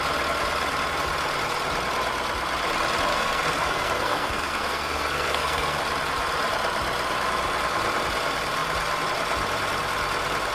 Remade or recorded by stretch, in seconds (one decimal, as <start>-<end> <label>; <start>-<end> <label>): 0.0-3.1 recorded; 3.1-5.8 remade; 5.8-10.5 recorded